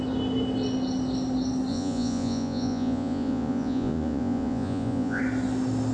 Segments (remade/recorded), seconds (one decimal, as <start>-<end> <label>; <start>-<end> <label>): 0.0-1.7 recorded; 1.7-5.2 remade; 5.2-5.9 recorded